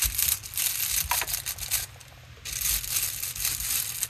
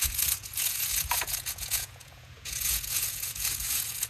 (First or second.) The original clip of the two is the first